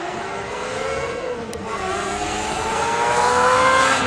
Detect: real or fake fake